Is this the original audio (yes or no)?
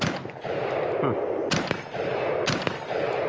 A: yes